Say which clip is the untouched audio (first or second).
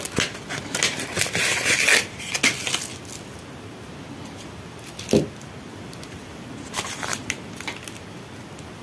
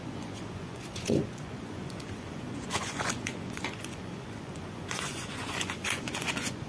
first